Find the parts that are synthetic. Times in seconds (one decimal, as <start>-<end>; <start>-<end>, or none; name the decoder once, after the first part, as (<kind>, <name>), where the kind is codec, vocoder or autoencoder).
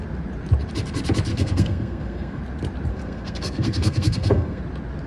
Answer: 1.3-2.4 (codec, SNAC); 2.9-4.6